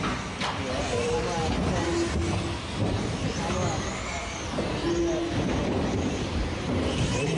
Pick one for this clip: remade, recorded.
recorded